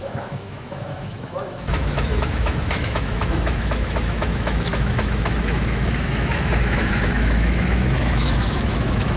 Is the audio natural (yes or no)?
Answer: no